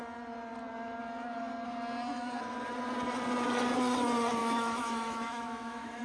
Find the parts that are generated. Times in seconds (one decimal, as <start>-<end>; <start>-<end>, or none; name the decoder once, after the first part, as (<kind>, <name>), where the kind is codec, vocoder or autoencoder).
4.4-6.0 (autoencoder, DAC-VAE)